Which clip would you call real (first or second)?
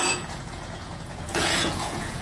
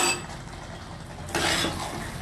second